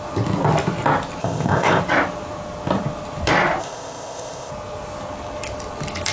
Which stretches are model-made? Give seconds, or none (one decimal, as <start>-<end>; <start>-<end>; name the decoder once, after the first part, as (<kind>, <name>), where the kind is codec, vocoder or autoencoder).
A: 1.2-1.8 (codec, ZipCodec); 3.6-4.5